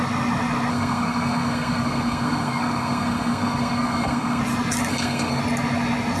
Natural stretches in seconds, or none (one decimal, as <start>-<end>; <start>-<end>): 0.0-0.7; 4.4-4.9; 5.4-6.2